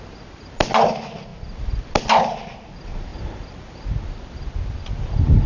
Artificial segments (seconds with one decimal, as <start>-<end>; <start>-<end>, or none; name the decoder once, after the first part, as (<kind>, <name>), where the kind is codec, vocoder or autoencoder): none

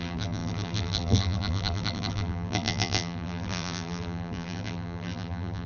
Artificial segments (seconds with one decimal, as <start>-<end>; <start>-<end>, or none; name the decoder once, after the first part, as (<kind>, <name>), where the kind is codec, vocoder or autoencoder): 0.0-5.7 (vocoder, BigVGAN v2)

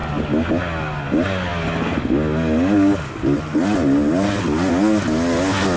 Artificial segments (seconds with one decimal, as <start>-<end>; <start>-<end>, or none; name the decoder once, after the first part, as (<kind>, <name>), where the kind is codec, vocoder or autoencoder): none

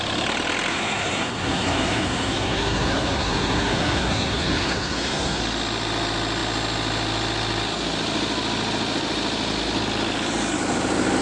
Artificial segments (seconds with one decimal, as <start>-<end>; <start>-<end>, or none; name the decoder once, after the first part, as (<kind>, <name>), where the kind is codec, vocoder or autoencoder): 0.7-5.4 (codec, SNAC)

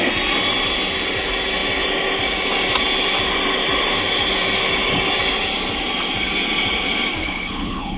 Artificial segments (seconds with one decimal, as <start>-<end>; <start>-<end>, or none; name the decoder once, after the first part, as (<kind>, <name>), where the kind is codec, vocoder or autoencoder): 7.2-8.0 (codec, HILCodec)

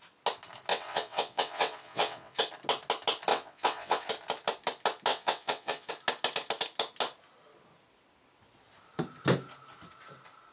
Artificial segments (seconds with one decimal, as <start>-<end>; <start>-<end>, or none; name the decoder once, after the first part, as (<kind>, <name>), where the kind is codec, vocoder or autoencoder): 0.7-2.4 (vocoder, WaveNeXt); 3.3-4.1; 5.1-5.9

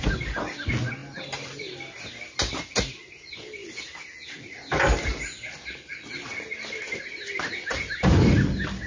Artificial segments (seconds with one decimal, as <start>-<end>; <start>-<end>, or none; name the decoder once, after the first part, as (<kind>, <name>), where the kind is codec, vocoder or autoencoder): none

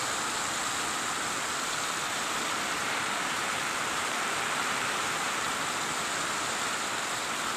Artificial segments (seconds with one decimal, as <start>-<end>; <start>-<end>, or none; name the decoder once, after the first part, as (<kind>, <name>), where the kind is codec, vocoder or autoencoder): 2.8-5.5 (vocoder, BigVGAN v2)